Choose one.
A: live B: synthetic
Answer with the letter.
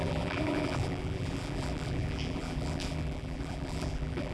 B